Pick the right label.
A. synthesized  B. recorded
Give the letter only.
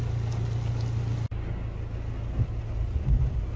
B